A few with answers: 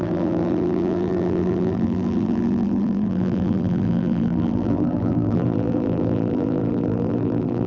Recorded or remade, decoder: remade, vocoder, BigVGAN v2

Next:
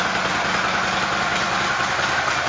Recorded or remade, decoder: recorded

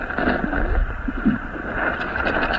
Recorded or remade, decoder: recorded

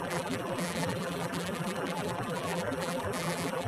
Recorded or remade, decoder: remade, vocoder, BigVGAN v2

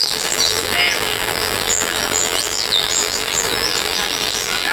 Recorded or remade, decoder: remade, vocoder, BigVGAN v2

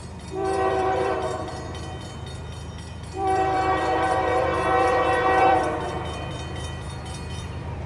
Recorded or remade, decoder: remade, vocoder, BigVGAN v2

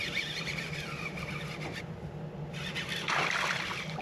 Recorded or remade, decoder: recorded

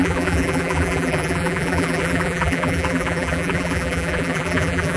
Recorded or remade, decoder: remade, vocoder, BigVGAN v2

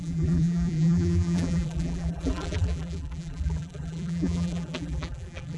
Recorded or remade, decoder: remade, vocoder, BigVGAN v2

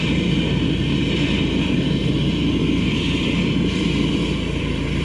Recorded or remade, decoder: remade, vocoder, BigVGAN v2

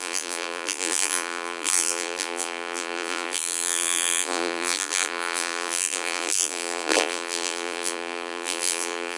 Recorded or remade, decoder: remade, vocoder, BigVGAN v2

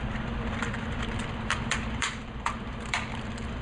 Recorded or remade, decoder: remade, vocoder, BigVGAN v2